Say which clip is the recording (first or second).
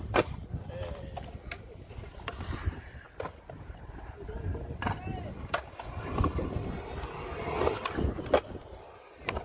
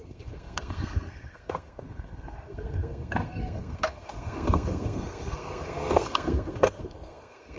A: first